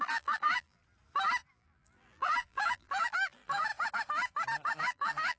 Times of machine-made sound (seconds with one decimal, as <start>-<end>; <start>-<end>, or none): 0.0-0.8; 1.5-3.7; 4.8-5.4